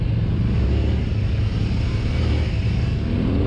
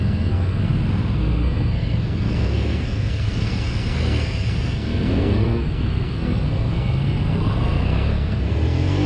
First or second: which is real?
first